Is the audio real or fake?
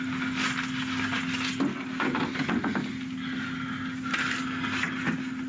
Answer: real